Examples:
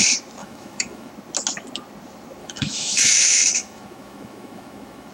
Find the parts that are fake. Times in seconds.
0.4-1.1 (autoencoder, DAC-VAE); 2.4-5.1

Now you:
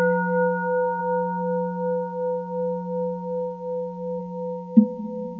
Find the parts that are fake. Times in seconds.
0.0-1.0 (autoencoder, DAC-VAE); 4.2-5.4

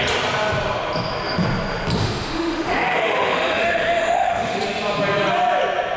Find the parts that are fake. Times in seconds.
2.0-4.6 (autoencoder, DAC-VAE)

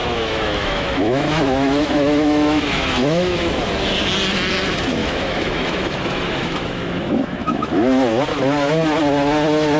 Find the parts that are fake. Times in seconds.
0.0-3.6 (autoencoder, DAC-VAE); 5.0-8.1

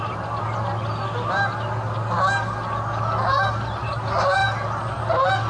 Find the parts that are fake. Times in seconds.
none